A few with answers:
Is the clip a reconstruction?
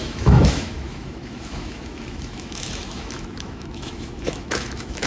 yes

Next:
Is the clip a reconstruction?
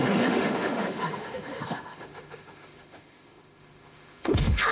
yes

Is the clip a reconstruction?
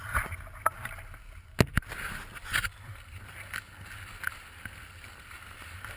no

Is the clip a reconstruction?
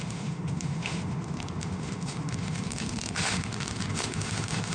yes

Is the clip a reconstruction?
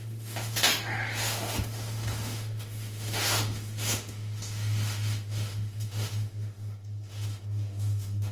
yes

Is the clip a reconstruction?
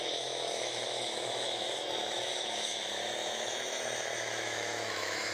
yes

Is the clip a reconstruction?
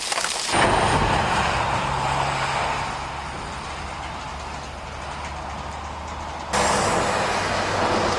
no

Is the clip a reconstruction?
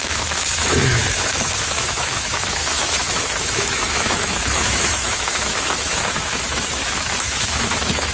yes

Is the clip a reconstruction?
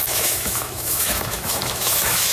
yes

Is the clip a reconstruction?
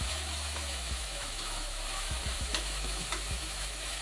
yes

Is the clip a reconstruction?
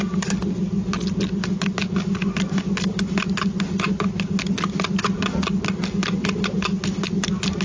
no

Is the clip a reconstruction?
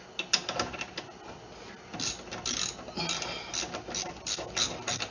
no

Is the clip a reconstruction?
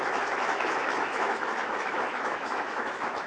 yes